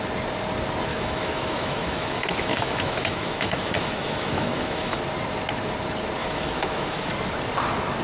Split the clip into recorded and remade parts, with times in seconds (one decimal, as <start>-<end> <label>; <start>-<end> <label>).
0.0-0.9 recorded; 0.9-5.0 remade; 5.0-6.2 recorded; 6.2-7.1 remade; 7.1-8.0 recorded